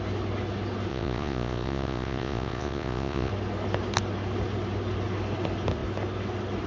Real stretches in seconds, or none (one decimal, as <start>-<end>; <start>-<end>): 0.0-0.9; 3.3-6.7